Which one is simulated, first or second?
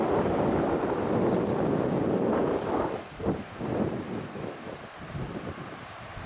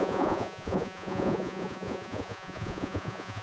second